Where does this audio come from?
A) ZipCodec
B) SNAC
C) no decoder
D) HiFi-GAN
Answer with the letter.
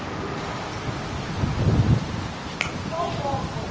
C